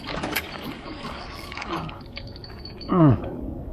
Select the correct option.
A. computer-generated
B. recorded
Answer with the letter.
A